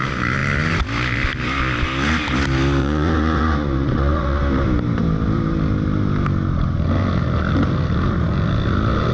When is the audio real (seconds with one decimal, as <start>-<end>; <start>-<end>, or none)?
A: 0.0-2.8; 4.4-9.1